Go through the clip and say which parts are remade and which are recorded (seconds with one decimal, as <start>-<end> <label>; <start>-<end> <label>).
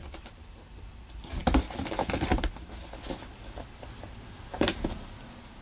0.0-5.6 recorded